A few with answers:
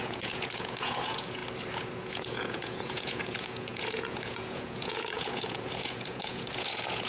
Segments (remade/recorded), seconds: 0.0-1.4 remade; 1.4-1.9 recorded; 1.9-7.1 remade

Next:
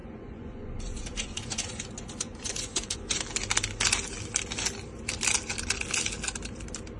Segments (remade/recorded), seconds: 0.0-3.2 remade; 3.2-7.0 recorded

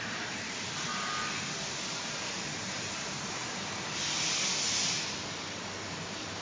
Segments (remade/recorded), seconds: 0.0-0.9 remade; 0.9-1.9 recorded; 1.9-6.4 remade

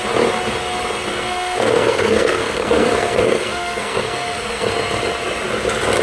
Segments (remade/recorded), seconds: 0.0-1.1 recorded; 1.1-4.7 remade; 4.7-6.0 recorded

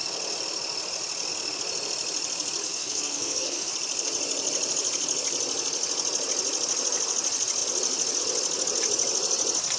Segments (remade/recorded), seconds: 0.0-2.6 recorded; 2.6-3.7 remade; 3.7-9.8 recorded